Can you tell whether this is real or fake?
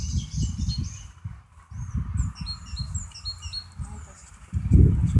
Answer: real